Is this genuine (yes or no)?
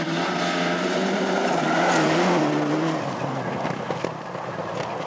yes